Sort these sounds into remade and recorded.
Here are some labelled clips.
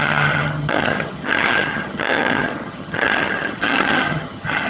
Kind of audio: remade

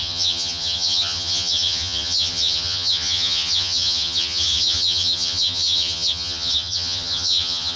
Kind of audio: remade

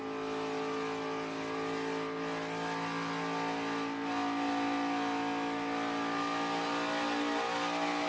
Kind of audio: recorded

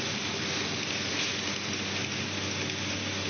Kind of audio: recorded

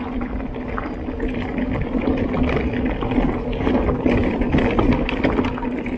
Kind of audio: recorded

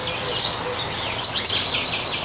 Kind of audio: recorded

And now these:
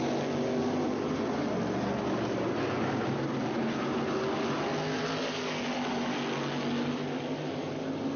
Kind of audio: recorded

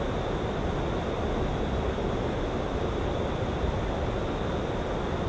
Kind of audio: recorded